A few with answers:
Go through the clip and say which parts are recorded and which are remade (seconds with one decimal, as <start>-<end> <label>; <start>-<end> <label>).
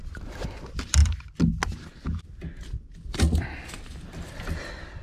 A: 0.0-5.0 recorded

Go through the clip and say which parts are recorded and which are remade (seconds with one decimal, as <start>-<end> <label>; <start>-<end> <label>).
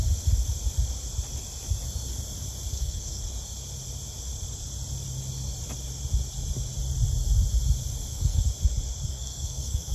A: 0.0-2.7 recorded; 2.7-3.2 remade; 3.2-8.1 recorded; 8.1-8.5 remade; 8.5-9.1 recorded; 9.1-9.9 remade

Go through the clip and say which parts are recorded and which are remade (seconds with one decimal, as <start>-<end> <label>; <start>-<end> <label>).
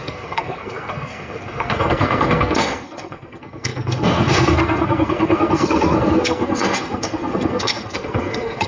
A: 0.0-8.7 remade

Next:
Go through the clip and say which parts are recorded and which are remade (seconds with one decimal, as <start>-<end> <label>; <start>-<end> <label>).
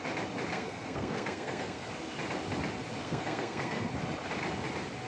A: 0.0-0.5 recorded; 0.5-1.9 remade; 1.9-3.0 recorded; 3.0-3.9 remade; 3.9-5.1 recorded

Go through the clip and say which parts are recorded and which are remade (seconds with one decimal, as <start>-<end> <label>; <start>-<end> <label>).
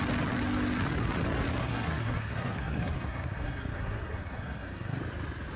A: 0.0-1.6 recorded; 1.6-5.0 remade; 5.0-5.6 recorded